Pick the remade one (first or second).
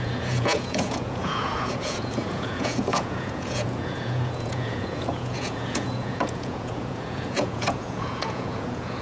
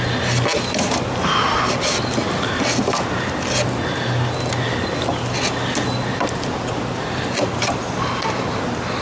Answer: first